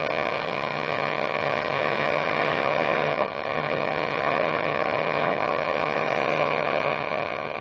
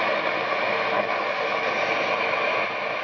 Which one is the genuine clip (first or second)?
second